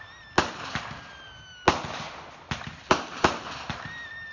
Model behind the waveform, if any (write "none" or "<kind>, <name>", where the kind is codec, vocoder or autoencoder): none